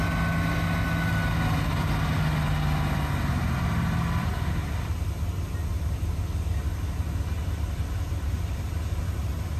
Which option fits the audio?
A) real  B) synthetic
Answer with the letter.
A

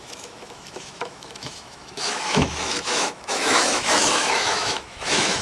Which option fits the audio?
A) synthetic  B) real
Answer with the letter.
A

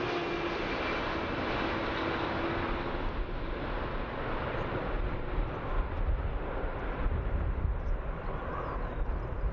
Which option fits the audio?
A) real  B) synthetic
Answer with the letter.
A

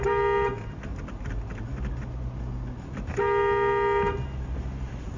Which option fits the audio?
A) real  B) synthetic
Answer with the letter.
A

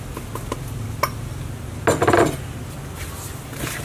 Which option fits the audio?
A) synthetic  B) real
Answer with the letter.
B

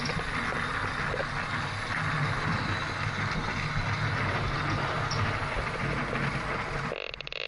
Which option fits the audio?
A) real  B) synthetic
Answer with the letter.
A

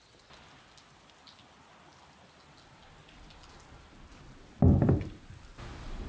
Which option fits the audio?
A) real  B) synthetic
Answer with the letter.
A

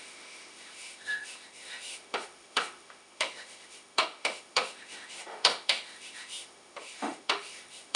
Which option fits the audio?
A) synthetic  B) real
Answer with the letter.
A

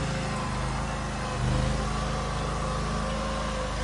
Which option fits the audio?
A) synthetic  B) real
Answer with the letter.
B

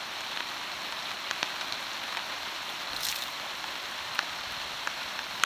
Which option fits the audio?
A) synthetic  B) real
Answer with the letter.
B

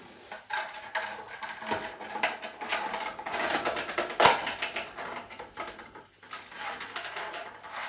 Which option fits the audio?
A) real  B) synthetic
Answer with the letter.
A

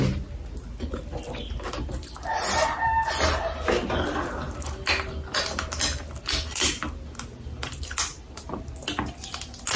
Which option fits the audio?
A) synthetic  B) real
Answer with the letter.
B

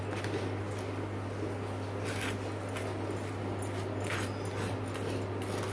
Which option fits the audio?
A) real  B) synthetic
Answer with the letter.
A